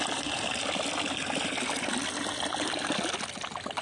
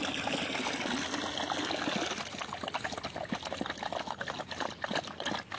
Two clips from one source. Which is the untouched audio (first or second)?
second